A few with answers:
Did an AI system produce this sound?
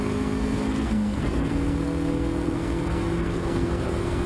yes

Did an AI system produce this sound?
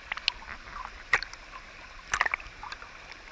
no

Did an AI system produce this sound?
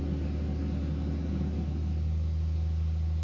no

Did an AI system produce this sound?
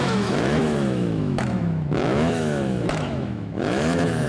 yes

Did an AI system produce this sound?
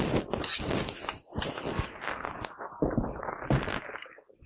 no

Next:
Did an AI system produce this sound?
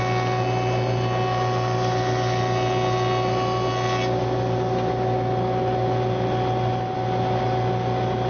no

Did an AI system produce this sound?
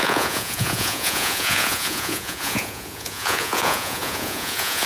yes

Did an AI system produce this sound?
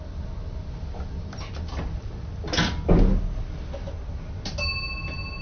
no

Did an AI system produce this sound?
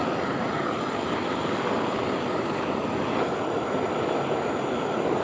no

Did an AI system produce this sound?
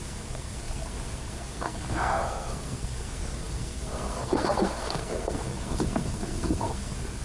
yes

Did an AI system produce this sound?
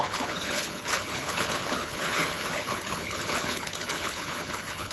yes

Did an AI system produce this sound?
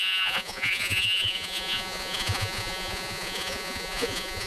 yes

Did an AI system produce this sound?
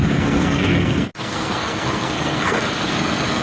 yes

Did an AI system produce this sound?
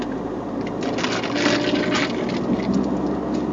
no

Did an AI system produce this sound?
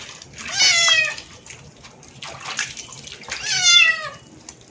no